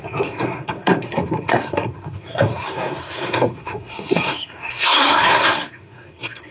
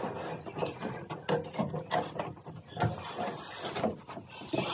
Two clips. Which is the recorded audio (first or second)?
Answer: second